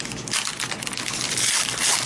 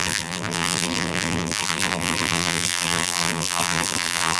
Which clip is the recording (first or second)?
first